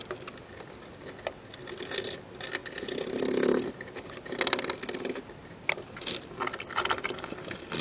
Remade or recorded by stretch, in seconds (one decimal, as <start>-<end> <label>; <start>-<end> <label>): 0.0-7.8 recorded